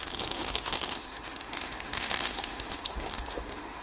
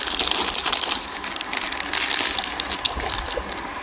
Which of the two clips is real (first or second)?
second